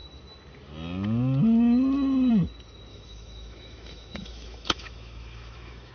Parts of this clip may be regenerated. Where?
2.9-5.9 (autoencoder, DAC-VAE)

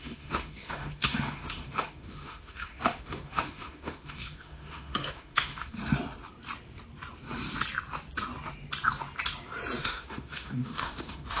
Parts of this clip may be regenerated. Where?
0.0-5.8 (autoencoder, DAC-VAE); 9.8-11.4

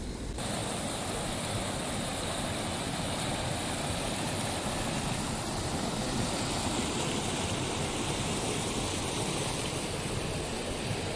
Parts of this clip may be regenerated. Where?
none

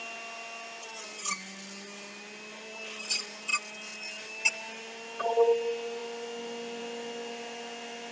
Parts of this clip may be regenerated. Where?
none

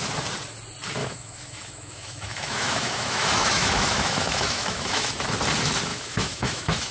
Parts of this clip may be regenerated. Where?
1.0-5.1 (autoencoder, DAC-VAE); 5.9-6.9